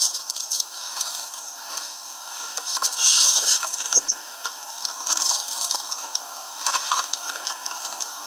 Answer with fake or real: fake